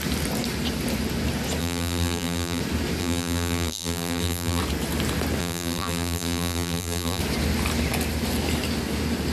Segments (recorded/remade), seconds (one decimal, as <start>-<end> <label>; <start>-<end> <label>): 0.0-1.6 recorded; 1.6-2.6 remade; 2.6-3.0 recorded; 3.0-4.6 remade; 4.6-5.4 recorded; 5.4-7.2 remade; 7.2-9.3 recorded